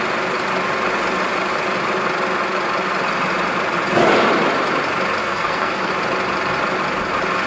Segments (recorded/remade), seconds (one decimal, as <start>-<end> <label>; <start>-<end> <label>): 0.0-5.2 recorded; 5.2-5.9 remade; 5.9-7.5 recorded